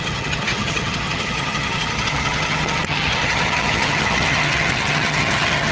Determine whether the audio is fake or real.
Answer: fake